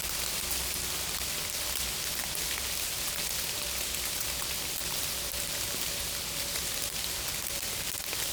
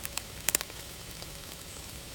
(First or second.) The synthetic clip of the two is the second